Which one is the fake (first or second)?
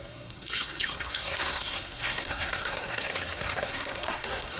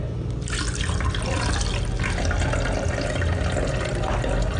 first